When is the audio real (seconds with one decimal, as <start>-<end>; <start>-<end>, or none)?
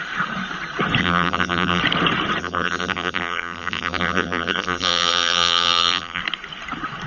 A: 0.0-1.0; 1.8-2.4; 6.2-7.1